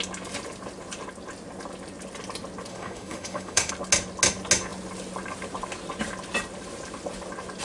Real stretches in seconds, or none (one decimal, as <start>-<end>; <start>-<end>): 0.0-2.7; 3.7-7.6